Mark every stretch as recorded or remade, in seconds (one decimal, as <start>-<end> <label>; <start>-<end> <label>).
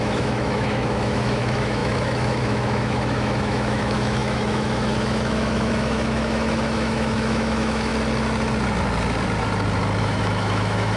0.0-7.9 remade; 7.9-10.0 recorded; 10.0-11.0 remade